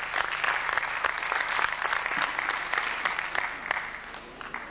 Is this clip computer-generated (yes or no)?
no